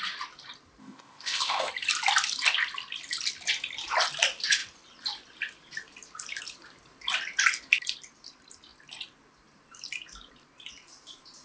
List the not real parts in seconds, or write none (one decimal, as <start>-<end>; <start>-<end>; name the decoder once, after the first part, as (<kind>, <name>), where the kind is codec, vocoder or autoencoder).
0.8-1.7 (codec, ZipCodec)